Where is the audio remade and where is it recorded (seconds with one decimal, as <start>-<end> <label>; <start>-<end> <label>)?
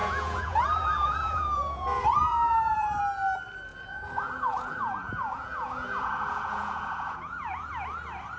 0.0-3.0 remade; 3.0-3.7 recorded; 3.7-7.7 remade; 7.7-8.4 recorded